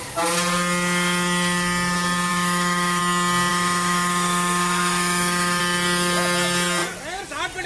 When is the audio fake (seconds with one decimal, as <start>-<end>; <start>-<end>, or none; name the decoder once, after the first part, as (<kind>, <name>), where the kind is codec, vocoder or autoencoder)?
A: 2.3-3.0 (autoencoder, DAC-VAE); 3.5-5.6